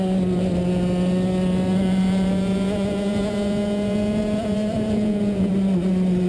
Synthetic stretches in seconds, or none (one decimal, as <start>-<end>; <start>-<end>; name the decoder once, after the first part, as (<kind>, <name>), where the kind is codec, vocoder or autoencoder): 1.7-5.5 (vocoder, Vocos)